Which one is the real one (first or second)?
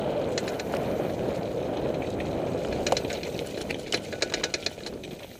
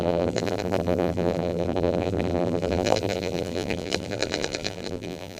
first